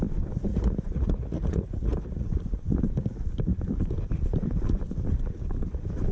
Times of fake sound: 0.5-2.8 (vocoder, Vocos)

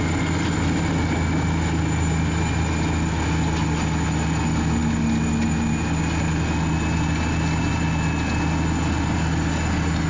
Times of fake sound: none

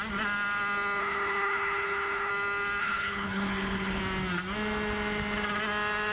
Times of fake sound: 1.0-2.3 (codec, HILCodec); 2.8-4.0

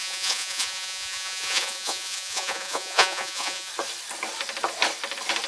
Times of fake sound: 0.0-3.7 (vocoder, Vocos)